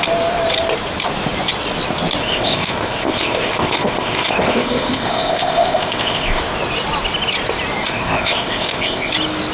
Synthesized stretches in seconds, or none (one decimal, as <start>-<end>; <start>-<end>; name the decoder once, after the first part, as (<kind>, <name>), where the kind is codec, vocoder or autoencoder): 2.2-6.4 (codec, ZipCodec); 7.8-9.1